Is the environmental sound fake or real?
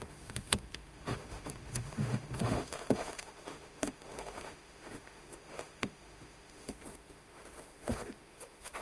fake